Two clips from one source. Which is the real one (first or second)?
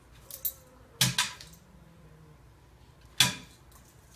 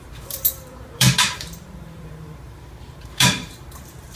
first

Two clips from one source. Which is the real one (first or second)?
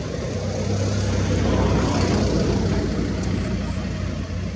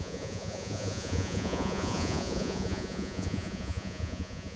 first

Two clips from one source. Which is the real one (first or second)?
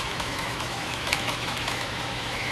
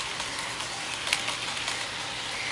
second